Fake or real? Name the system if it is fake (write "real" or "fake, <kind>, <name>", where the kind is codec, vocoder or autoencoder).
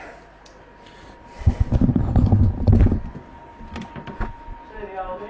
real